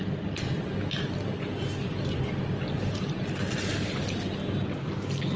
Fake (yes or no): no